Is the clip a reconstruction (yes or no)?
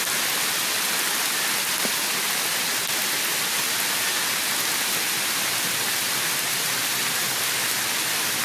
no